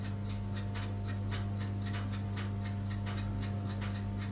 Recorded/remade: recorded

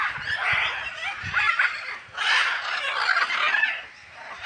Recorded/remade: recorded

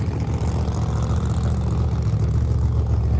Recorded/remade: recorded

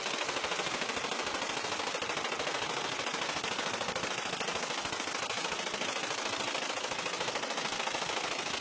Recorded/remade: recorded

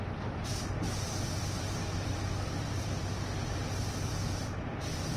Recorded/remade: remade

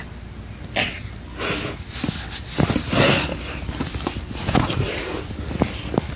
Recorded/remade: recorded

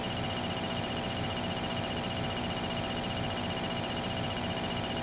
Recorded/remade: recorded